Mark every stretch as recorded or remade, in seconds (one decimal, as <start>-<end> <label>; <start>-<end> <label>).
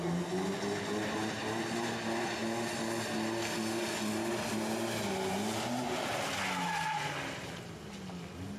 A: 0.0-8.6 recorded